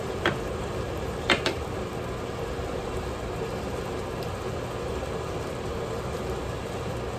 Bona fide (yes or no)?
yes